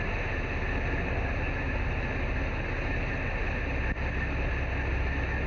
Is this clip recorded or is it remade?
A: recorded